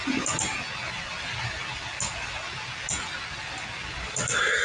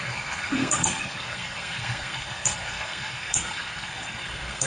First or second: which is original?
first